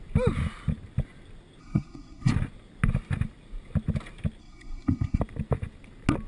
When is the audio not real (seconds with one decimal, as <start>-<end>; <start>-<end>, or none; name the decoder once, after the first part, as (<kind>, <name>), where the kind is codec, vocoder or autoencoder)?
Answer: 1.6-2.3 (codec, SNAC); 4.4-5.2